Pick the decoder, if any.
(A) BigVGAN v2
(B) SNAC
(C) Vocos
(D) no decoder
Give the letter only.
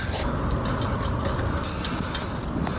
D